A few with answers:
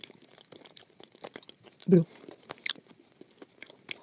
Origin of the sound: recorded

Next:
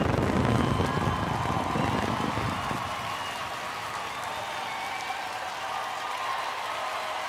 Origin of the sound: recorded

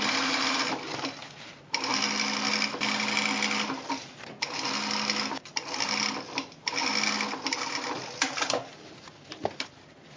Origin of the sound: recorded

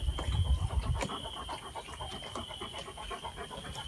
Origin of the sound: recorded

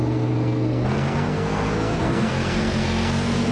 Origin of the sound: remade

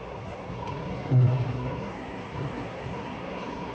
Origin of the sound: remade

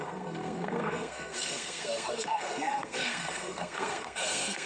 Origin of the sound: remade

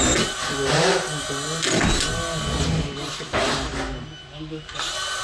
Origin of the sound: recorded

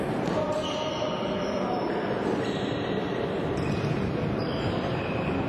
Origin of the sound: recorded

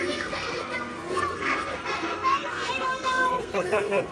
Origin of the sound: remade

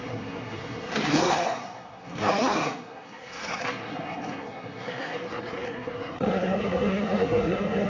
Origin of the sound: remade